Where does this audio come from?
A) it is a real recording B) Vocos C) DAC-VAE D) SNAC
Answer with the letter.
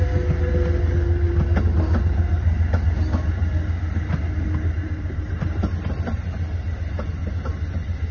A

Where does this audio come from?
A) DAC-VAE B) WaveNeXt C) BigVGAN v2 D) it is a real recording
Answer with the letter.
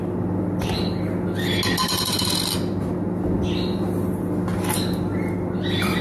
D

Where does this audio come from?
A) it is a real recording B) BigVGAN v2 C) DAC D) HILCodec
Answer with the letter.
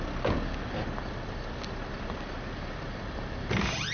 A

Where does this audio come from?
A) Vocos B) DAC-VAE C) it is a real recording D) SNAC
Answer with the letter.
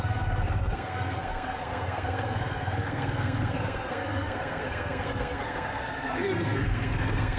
D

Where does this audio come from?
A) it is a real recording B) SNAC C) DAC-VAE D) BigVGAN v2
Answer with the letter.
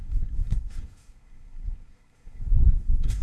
B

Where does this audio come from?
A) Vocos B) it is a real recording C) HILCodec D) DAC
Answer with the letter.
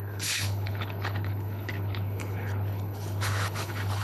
C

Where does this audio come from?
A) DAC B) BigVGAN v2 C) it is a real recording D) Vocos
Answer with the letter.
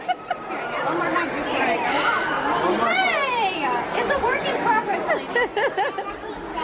C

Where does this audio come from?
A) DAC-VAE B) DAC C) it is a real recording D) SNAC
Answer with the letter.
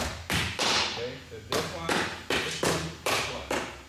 C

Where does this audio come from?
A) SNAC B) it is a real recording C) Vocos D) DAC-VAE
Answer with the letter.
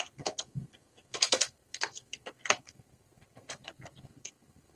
A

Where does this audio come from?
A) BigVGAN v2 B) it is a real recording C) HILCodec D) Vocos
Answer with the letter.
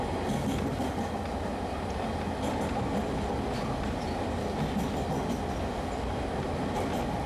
B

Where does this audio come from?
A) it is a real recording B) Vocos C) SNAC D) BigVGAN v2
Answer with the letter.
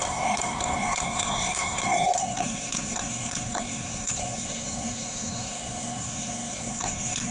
C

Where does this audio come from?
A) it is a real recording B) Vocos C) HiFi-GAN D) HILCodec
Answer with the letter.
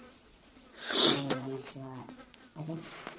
B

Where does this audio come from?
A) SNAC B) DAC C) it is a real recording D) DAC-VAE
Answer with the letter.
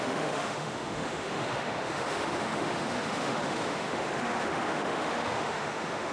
D